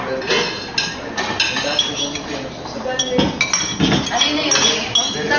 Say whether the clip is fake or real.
real